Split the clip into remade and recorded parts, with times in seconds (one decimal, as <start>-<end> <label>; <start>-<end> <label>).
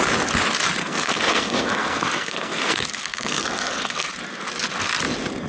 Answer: 0.0-0.8 recorded; 0.8-4.1 remade; 4.1-5.5 recorded